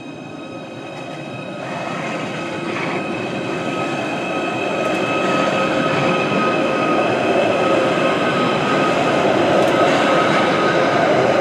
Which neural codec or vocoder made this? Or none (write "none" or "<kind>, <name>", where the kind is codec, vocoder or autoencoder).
none